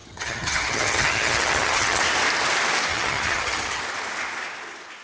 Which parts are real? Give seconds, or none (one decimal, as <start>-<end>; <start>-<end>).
2.0-2.9; 3.8-5.0

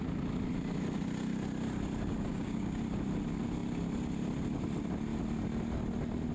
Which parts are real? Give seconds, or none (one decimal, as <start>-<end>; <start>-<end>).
0.0-2.3; 2.8-6.3

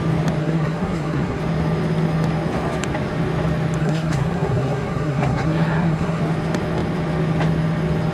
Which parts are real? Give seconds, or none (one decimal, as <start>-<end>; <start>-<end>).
0.0-0.4; 1.4-3.8; 6.2-8.1

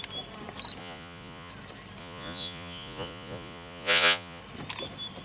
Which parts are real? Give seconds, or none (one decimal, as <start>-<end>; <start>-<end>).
0.0-0.8; 1.5-2.0; 4.4-5.2

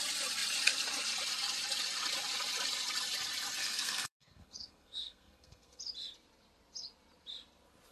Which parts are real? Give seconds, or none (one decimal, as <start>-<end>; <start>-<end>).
0.0-3.6; 5.8-7.9